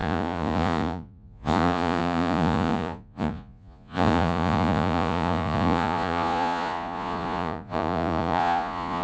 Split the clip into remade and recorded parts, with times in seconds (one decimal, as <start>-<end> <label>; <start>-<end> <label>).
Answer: 0.0-9.0 remade